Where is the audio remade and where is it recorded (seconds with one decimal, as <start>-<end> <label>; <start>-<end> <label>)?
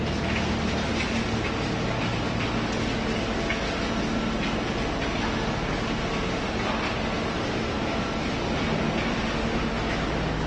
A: 0.0-10.5 recorded